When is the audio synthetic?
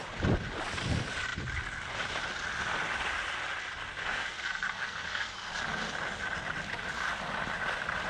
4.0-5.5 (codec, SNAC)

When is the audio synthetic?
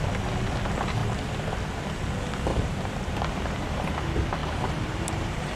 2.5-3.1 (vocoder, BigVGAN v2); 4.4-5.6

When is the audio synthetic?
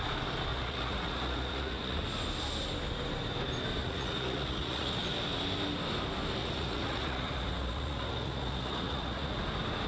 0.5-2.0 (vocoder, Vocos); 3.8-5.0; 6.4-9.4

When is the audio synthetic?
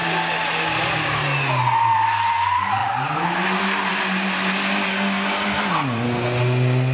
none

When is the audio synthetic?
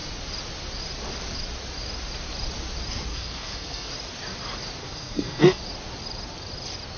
3.1-3.9 (codec, SNAC); 4.8-5.6